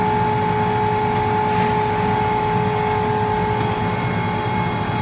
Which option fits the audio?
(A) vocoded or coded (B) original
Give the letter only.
B